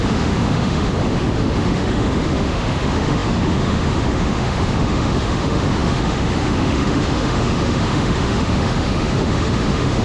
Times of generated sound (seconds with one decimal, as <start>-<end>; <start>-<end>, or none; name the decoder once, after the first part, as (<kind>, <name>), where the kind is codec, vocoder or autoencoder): 0.0-10.0 (autoencoder, DAC-VAE)